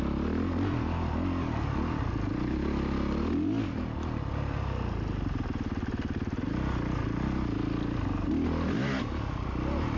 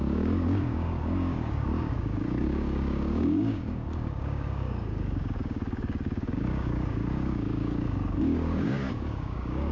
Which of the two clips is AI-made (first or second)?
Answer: second